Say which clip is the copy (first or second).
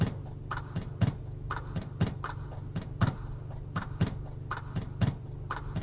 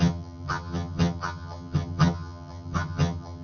second